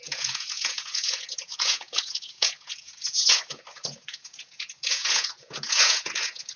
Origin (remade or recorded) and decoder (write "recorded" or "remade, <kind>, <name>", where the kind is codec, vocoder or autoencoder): remade, vocoder, Vocos